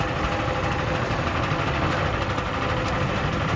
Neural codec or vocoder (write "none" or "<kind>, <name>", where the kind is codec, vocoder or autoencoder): none